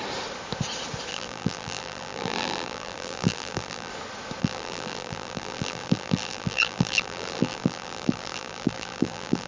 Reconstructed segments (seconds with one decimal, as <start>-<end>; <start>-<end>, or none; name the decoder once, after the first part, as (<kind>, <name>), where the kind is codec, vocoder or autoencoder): 1.1-3.9 (vocoder, BigVGAN v2); 4.4-9.5